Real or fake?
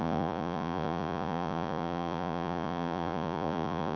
fake